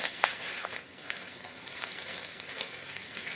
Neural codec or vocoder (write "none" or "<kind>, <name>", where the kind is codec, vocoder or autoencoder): codec, SNAC